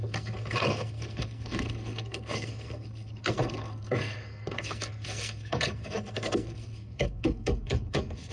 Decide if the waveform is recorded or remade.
remade